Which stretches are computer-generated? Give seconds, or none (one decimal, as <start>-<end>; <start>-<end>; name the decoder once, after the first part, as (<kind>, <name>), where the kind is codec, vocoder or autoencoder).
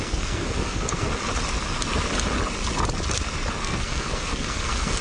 0.0-1.1 (codec, SNAC); 3.5-5.0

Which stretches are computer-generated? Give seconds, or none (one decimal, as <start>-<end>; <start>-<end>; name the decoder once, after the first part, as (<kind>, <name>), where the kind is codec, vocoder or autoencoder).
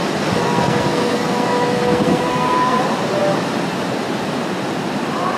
0.4-2.8 (codec, SNAC)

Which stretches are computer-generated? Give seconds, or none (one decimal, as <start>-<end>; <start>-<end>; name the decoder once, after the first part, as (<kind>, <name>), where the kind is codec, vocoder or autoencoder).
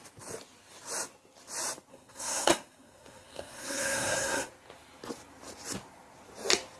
1.9-4.5 (codec, SNAC)